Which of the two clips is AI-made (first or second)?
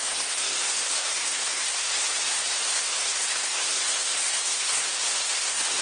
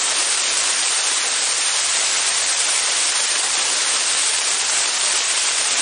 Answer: first